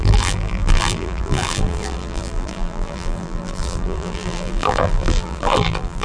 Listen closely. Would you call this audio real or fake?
fake